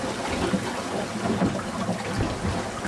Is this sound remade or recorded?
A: remade